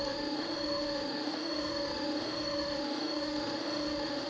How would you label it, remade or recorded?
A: remade